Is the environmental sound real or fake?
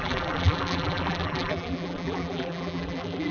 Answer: fake